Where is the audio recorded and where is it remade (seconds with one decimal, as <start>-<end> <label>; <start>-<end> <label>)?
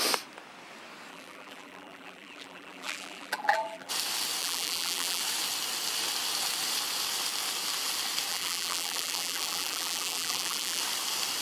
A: 0.0-1.1 recorded; 1.1-3.9 remade; 3.9-4.4 recorded; 4.4-5.2 remade; 5.2-8.3 recorded; 8.3-10.8 remade; 10.8-11.4 recorded